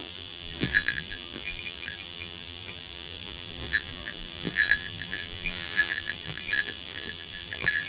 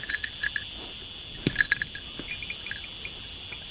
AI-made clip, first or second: first